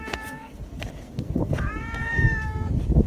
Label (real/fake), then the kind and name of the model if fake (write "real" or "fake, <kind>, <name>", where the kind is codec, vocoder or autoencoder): fake, codec, SNAC